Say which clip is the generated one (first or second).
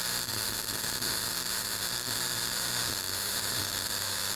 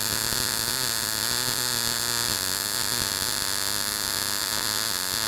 first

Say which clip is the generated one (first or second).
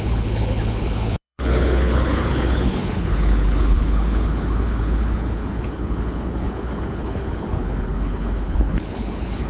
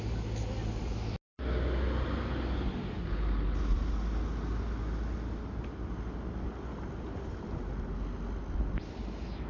first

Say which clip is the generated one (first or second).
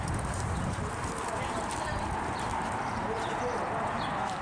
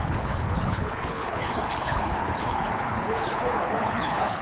second